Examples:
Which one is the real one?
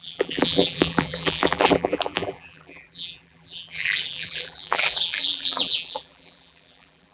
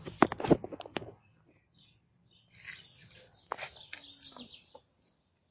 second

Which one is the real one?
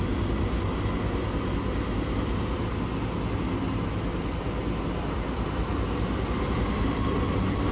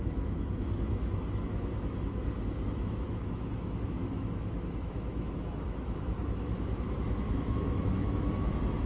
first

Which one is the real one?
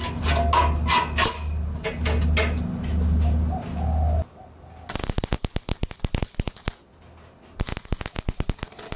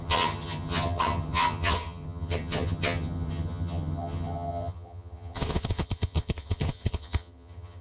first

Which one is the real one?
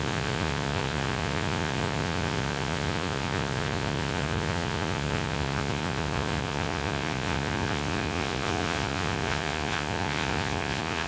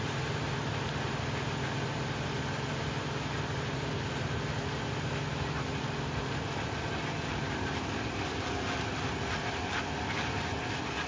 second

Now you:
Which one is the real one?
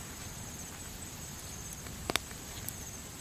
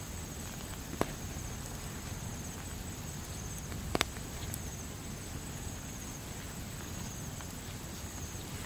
second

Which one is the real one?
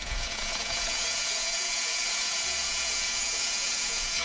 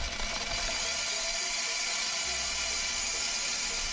second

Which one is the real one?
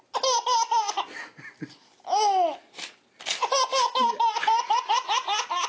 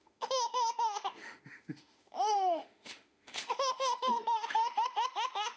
first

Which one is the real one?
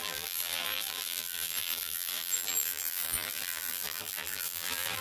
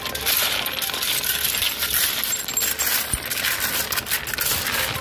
second